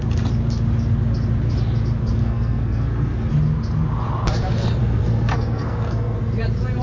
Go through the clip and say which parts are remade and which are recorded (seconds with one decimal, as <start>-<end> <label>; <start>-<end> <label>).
0.0-2.2 recorded; 2.2-3.3 remade; 3.3-4.8 recorded; 4.8-6.2 remade; 6.2-6.8 recorded